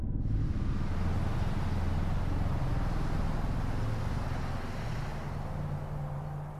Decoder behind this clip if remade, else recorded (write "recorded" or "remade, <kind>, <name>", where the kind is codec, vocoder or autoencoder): recorded